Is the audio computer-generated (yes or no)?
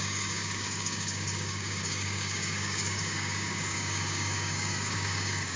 yes